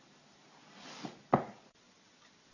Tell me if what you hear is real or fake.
real